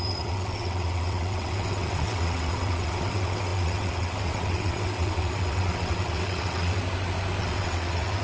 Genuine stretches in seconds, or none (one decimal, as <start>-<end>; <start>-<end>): 6.8-7.4